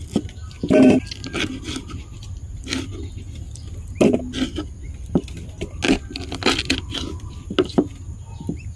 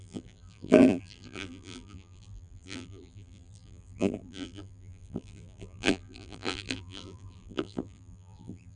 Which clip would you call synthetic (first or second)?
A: second